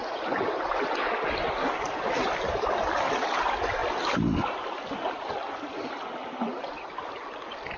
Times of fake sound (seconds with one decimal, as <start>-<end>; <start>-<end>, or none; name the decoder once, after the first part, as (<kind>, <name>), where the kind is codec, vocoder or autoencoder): 0.0-0.6 (vocoder, BigVGAN v2); 3.8-5.2